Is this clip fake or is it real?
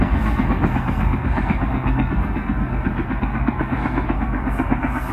fake